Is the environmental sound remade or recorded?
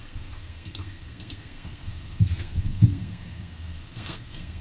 remade